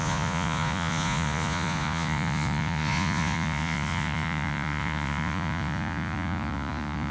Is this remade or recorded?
remade